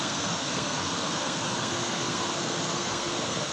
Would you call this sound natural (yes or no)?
no